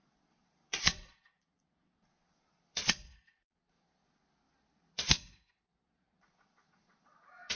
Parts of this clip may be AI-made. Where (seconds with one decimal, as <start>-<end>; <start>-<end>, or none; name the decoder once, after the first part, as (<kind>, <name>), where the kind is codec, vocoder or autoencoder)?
0.0-4.0 (vocoder, Vocos); 5.5-7.5